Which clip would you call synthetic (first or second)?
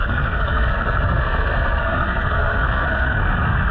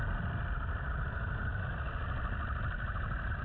first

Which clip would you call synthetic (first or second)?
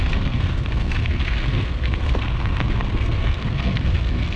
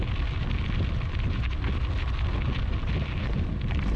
first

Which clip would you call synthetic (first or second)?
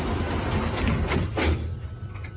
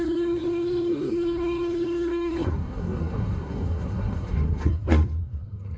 second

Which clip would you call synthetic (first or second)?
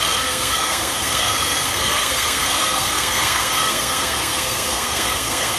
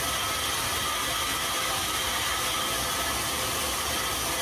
first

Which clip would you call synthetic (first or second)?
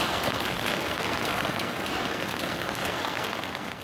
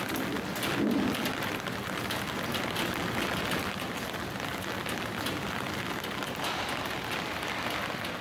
first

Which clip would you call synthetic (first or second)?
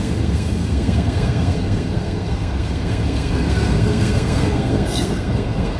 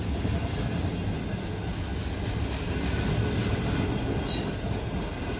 first